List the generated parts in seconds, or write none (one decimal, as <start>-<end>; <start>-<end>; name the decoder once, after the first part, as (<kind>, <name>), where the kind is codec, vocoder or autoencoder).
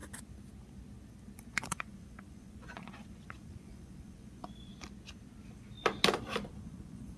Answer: 1.5-4.7 (vocoder, Vocos); 6.5-7.2